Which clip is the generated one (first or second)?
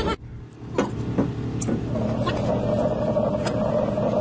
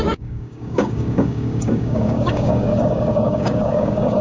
second